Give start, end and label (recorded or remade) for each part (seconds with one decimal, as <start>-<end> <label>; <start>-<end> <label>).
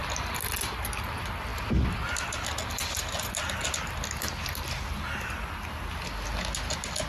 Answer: 0.0-7.1 recorded